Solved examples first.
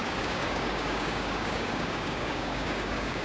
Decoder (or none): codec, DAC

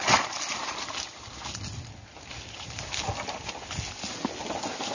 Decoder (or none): none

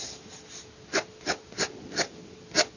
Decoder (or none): none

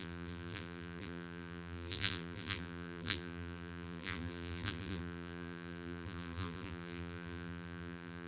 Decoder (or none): vocoder, BigVGAN v2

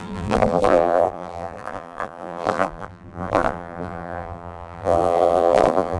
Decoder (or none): vocoder, BigVGAN v2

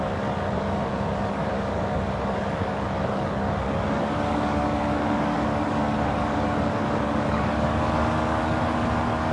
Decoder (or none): codec, DAC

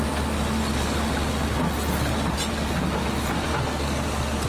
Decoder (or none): none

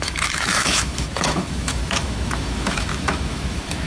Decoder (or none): autoencoder, DAC-VAE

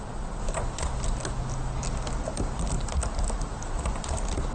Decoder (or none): none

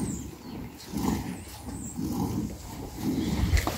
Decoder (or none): none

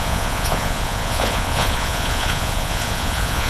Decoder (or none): vocoder, Vocos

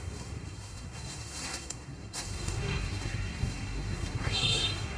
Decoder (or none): codec, SNAC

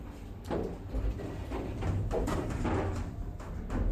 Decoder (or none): vocoder, BigVGAN v2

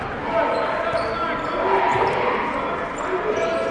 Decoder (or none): none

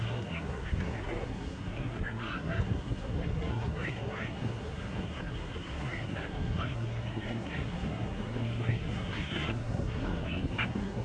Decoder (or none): codec, SNAC